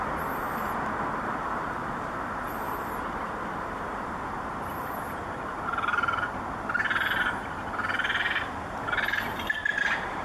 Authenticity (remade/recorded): recorded